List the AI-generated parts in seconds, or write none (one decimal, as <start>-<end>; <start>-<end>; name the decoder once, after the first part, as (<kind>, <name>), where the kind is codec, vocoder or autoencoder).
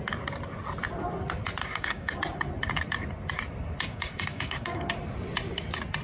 1.6-2.2 (codec, DAC); 3.9-4.9